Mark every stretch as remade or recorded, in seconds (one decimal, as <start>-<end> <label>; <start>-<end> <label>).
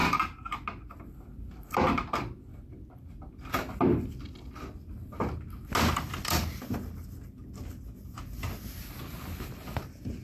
0.0-10.2 recorded